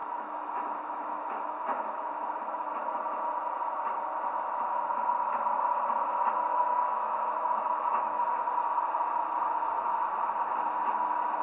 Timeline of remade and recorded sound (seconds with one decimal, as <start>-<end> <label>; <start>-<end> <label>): 0.0-2.7 remade; 2.7-6.5 recorded; 6.5-8.2 remade; 8.2-11.4 recorded